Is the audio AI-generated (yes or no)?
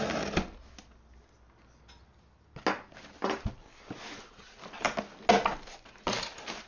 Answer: no